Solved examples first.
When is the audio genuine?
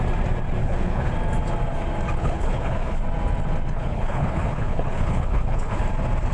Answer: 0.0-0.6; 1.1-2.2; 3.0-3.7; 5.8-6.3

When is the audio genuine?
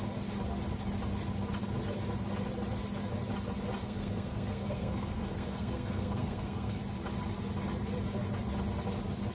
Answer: 0.0-3.8; 6.8-9.3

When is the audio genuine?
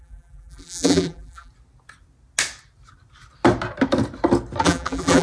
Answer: 1.5-4.6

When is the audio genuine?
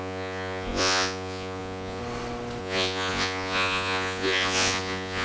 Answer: 2.0-2.6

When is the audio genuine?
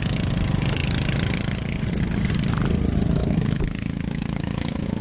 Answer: 0.0-3.2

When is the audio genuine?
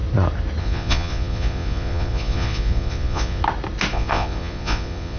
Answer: 0.0-0.6; 3.4-3.9